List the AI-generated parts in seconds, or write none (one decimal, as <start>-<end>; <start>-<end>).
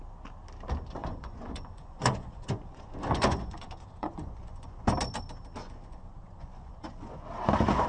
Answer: 1.0-4.9; 5.6-7.2